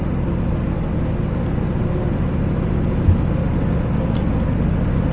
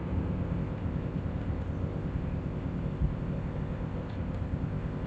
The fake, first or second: second